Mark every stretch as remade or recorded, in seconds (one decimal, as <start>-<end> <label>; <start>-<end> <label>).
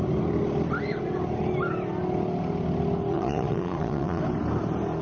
0.0-3.1 recorded; 3.1-4.2 remade; 4.2-5.0 recorded